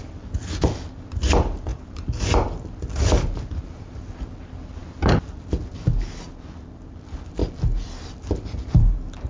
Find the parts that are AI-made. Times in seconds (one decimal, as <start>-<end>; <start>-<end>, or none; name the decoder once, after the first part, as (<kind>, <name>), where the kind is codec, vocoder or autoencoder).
none